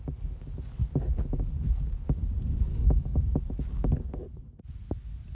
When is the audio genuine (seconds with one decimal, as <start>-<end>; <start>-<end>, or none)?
0.0-2.7; 3.2-5.3